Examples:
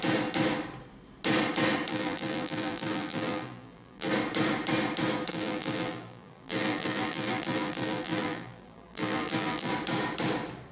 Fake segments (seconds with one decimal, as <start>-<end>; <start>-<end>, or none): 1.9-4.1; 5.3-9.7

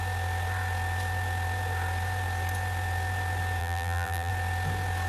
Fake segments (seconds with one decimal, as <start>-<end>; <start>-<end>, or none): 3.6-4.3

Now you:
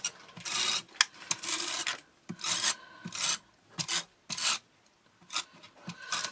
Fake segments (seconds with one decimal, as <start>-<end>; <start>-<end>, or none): none